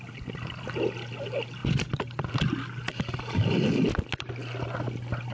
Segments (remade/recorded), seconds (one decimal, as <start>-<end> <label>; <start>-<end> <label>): 0.0-5.3 recorded